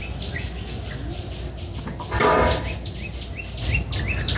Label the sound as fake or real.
real